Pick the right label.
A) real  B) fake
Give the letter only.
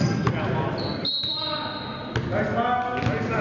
A